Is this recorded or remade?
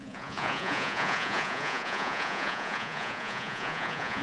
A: remade